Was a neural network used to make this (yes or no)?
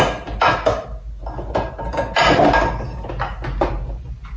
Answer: no